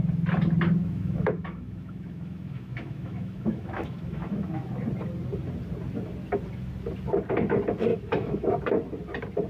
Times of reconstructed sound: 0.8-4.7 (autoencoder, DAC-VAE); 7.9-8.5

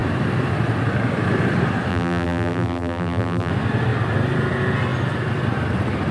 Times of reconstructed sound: 1.9-3.5 (vocoder, BigVGAN v2)

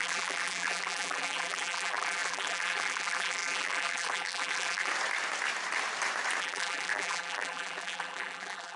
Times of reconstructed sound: 0.0-4.9 (vocoder, BigVGAN v2); 6.4-8.8